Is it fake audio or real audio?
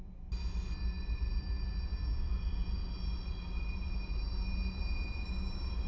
real